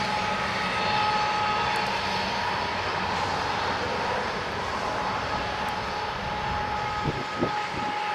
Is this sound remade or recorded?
recorded